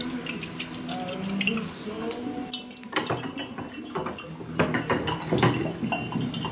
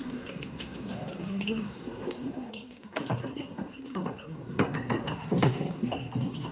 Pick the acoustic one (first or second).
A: first